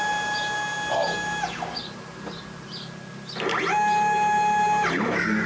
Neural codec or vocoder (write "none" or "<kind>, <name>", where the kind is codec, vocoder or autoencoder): none